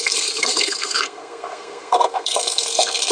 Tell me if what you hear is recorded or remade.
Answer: remade